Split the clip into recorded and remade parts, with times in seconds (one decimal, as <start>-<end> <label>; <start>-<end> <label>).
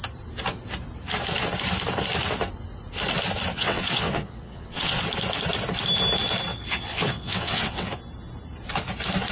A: 0.0-3.5 recorded; 3.5-5.0 remade; 5.0-6.5 recorded; 6.5-7.9 remade; 7.9-9.3 recorded